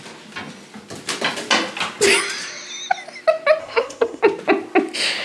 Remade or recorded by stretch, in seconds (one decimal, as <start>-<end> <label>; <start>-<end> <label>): 0.0-3.6 recorded; 3.6-4.2 remade; 4.2-5.2 recorded